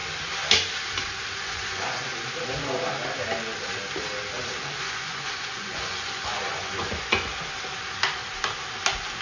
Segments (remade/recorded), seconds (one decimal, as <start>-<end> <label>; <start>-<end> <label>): 0.0-1.4 recorded; 1.4-2.1 remade; 2.1-4.8 recorded; 4.8-7.3 remade; 7.3-9.2 recorded